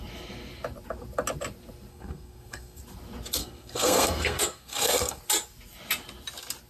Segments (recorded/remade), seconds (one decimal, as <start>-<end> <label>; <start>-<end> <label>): 0.0-1.9 recorded; 1.9-2.8 remade; 2.8-3.4 recorded; 3.4-5.2 remade; 5.2-6.7 recorded